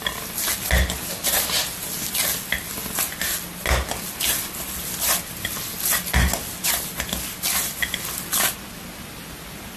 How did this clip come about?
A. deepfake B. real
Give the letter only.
B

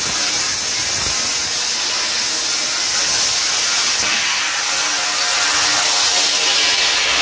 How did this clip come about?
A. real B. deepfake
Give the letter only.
A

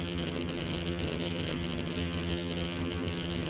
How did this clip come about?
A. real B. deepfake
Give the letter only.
B